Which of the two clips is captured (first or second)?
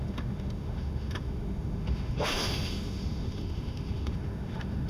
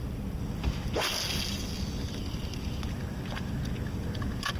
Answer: second